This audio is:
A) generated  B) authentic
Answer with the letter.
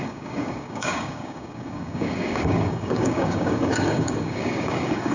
A